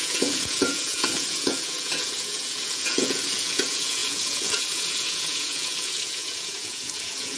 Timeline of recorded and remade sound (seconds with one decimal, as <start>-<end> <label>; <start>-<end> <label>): 0.0-7.4 remade